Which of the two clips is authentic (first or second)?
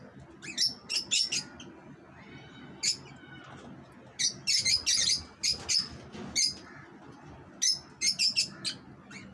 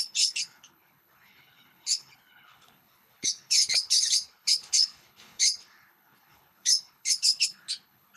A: first